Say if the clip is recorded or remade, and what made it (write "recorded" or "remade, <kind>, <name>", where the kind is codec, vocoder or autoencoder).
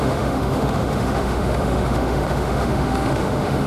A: remade, autoencoder, DAC-VAE